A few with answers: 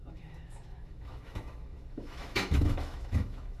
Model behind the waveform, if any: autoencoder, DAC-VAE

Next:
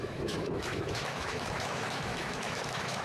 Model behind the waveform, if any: autoencoder, DAC-VAE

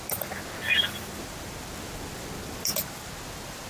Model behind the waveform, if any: none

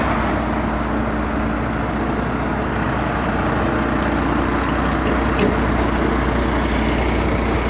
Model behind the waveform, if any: none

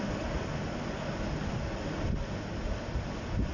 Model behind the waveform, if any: none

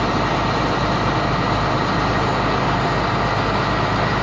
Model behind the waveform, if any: none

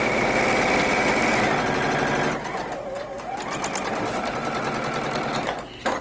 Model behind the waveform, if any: none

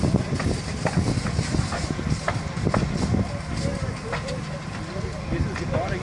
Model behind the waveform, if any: none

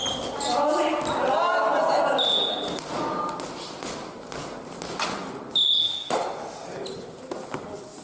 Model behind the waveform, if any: none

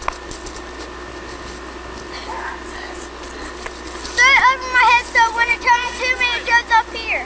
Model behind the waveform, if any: none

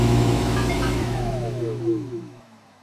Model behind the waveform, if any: autoencoder, DAC-VAE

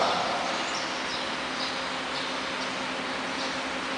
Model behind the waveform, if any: none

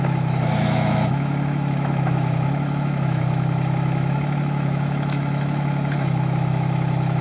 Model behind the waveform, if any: autoencoder, DAC-VAE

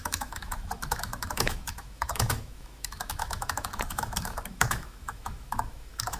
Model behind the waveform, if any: autoencoder, DAC-VAE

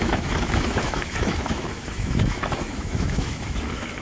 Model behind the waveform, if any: autoencoder, DAC-VAE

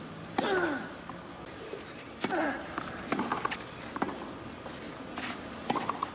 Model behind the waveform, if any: none